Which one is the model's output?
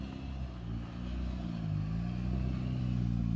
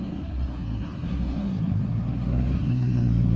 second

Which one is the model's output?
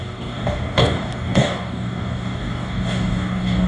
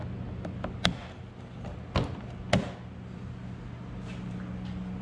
first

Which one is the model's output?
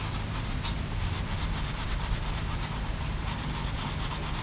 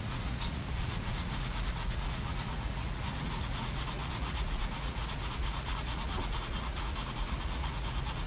second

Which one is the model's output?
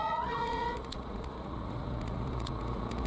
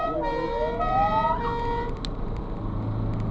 first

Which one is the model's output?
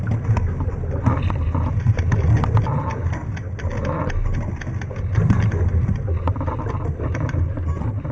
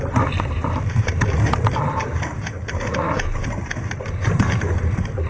second